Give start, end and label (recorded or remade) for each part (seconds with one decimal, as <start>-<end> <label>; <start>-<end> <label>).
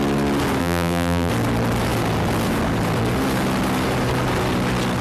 0.0-0.6 recorded; 0.6-1.3 remade; 1.3-5.0 recorded